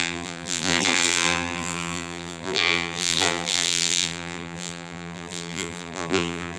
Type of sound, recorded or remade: remade